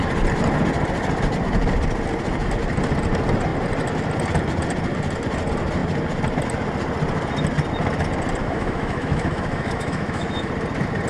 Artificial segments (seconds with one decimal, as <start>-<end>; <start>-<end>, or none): 8.4-10.5